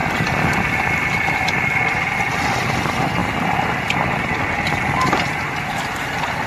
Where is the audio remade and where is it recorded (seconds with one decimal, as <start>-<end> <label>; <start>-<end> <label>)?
0.0-6.5 recorded